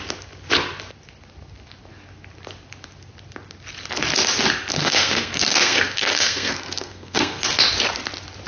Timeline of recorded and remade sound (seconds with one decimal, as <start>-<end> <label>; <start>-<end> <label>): 0.0-4.7 recorded; 4.7-7.4 remade; 7.4-8.5 recorded